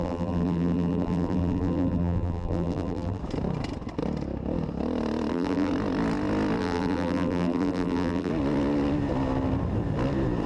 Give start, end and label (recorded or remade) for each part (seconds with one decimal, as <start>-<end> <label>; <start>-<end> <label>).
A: 0.0-3.2 remade; 3.2-5.3 recorded; 5.3-5.7 remade; 5.7-6.6 recorded; 6.6-8.3 remade; 8.3-10.5 recorded